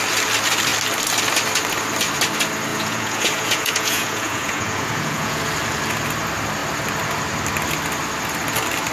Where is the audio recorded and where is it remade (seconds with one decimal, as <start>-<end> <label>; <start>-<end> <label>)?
0.0-2.7 recorded; 2.7-5.4 remade; 5.4-8.9 recorded